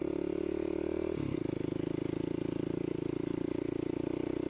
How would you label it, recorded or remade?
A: recorded